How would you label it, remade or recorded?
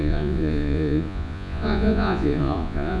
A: remade